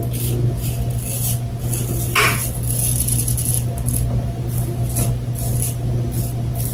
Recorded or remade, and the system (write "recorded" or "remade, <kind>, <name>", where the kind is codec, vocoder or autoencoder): recorded